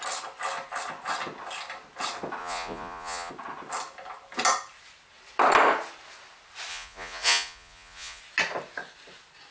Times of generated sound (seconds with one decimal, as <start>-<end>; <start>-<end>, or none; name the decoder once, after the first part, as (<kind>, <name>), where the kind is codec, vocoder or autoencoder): 2.4-3.3 (vocoder, Vocos); 6.7-8.2